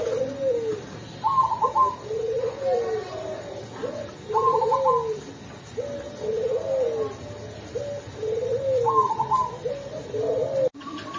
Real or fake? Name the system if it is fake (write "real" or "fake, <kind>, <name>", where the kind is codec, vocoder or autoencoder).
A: real